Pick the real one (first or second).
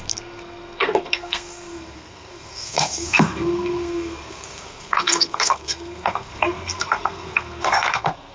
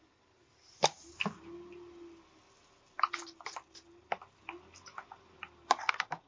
second